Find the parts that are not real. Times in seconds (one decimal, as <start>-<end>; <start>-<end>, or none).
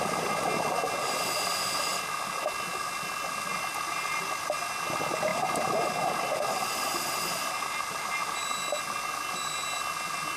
3.5-4.6; 5.3-6.9